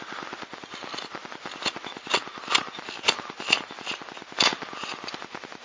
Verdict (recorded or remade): recorded